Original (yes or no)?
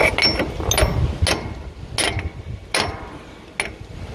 yes